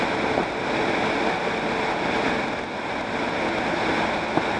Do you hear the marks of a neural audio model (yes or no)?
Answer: no